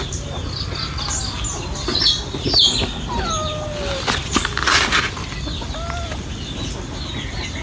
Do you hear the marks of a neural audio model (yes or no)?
no